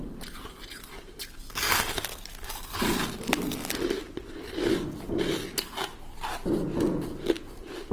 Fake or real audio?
real